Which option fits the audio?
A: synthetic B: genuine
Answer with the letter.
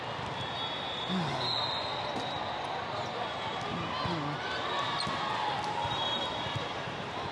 B